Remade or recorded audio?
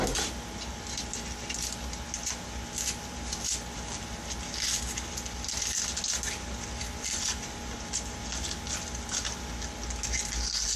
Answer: recorded